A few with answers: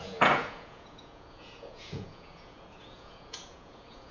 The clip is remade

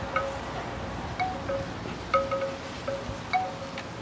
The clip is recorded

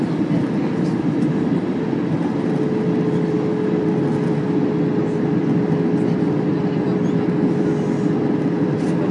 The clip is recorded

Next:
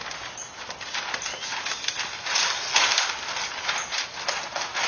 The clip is recorded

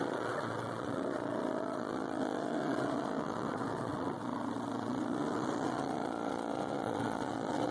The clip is remade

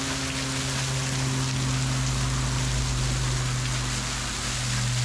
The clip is recorded